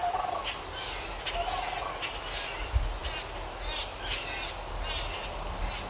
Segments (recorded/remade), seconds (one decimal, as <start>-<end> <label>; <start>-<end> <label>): 0.0-5.9 recorded